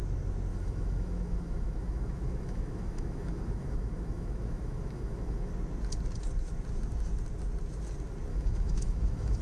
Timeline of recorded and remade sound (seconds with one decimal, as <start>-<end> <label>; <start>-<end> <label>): 0.0-0.5 recorded; 0.5-5.5 remade; 5.5-8.3 recorded; 8.3-9.4 remade